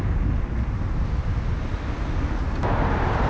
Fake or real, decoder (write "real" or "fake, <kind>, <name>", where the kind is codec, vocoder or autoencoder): real